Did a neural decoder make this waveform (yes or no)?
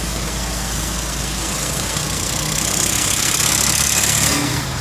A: yes